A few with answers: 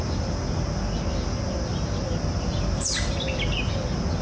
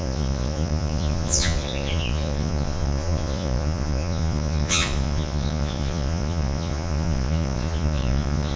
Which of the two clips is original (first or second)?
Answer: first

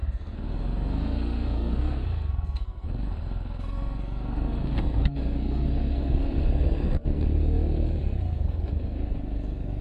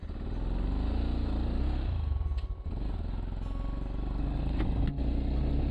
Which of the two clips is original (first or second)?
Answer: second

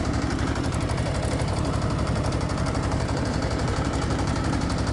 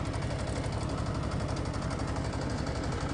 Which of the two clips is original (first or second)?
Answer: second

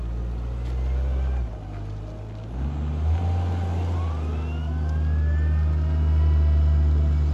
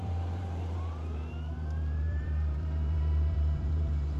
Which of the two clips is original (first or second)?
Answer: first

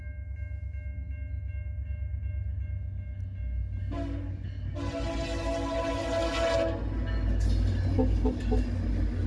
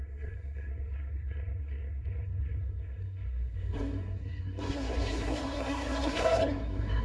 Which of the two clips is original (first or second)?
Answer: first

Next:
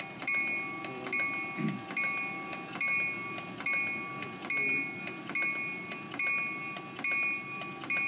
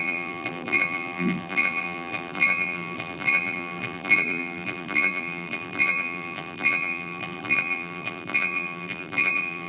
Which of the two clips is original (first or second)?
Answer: first